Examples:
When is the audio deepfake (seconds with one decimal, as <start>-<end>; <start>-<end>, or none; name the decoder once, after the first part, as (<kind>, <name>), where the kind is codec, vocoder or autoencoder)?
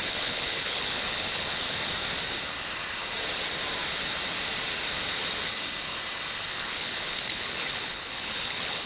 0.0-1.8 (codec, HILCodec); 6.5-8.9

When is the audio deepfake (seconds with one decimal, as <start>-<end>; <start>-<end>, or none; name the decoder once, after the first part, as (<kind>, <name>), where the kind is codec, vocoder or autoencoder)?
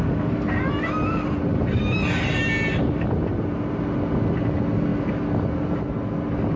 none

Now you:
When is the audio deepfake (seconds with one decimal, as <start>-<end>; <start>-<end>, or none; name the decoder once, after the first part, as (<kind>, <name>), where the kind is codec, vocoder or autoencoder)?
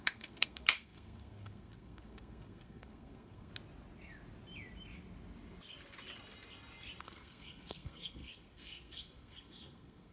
0.0-3.5 (codec, SNAC); 7.0-10.1